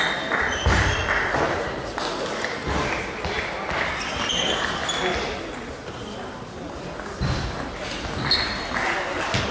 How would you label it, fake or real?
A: real